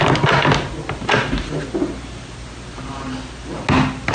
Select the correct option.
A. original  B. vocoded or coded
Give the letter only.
A